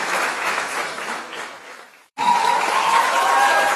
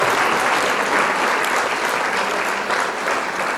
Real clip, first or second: second